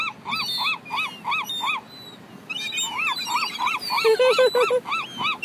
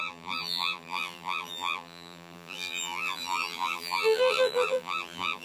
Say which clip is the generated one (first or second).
second